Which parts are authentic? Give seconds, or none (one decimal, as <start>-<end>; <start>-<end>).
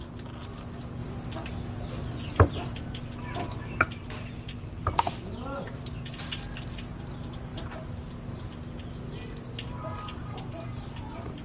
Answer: 0.0-11.4